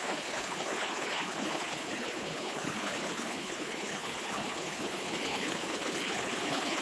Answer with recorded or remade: remade